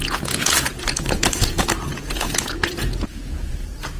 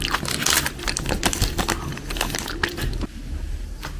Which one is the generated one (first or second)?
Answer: first